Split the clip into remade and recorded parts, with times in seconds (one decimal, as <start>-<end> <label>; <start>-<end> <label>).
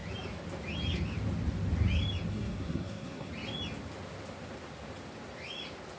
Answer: 0.0-2.3 recorded; 2.3-3.3 remade; 3.3-6.0 recorded